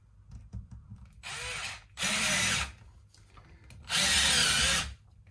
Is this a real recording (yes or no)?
yes